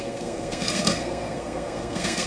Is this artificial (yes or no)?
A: yes